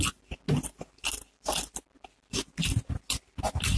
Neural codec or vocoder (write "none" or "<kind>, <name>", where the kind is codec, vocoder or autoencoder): none